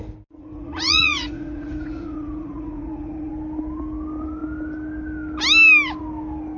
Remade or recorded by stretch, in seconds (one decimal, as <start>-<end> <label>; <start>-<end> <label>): 0.0-0.4 recorded; 0.4-3.3 remade; 3.3-6.6 recorded